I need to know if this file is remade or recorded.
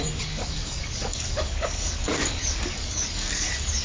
remade